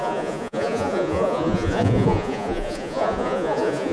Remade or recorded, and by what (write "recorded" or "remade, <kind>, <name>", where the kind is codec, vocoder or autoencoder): remade, vocoder, Vocos